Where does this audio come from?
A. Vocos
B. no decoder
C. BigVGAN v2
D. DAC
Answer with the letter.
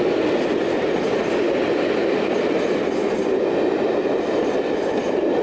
B